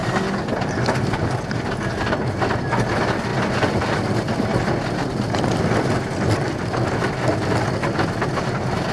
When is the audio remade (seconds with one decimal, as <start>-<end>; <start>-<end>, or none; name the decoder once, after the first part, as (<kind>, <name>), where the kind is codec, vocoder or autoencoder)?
none